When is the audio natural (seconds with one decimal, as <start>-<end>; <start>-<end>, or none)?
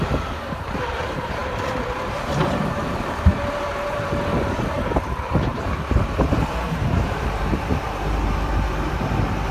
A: 4.3-5.9